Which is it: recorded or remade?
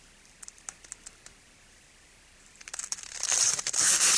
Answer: remade